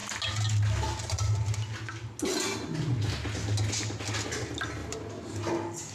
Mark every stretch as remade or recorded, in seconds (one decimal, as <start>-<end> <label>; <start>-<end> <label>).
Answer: 0.0-5.9 recorded